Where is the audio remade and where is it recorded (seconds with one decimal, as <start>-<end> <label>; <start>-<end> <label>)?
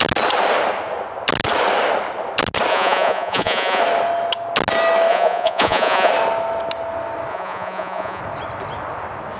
0.0-2.7 recorded; 2.7-3.8 remade; 3.8-5.1 recorded; 5.1-6.1 remade; 6.1-7.3 recorded; 7.3-8.2 remade; 8.2-9.4 recorded